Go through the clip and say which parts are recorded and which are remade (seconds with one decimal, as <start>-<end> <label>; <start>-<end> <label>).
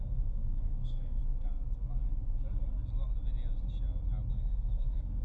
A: 0.0-1.2 remade; 1.2-4.3 recorded; 4.3-5.2 remade